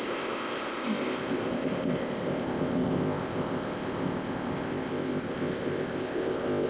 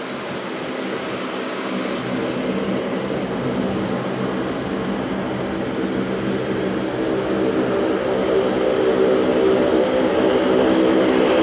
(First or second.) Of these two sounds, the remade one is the first